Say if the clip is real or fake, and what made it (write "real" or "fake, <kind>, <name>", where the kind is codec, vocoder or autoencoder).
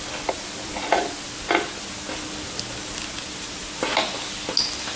real